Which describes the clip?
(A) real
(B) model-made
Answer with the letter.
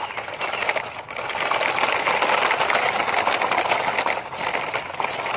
A